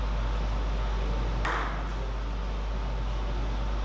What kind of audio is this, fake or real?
real